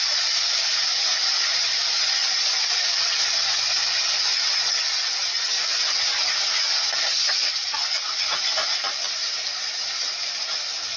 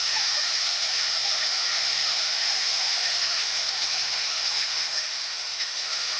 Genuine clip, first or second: first